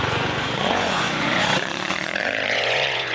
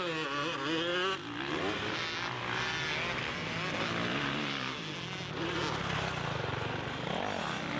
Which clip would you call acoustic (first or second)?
second